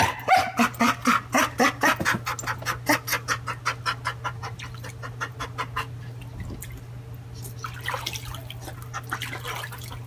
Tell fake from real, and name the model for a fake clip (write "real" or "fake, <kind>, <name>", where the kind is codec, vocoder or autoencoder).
real